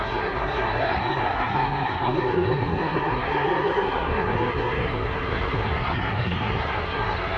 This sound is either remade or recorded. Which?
remade